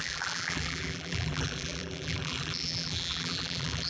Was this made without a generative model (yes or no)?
no